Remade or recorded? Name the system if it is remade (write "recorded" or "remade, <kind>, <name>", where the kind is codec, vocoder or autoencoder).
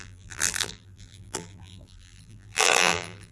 remade, vocoder, BigVGAN v2